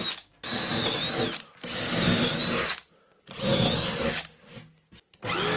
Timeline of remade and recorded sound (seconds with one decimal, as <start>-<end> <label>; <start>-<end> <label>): 0.0-5.6 recorded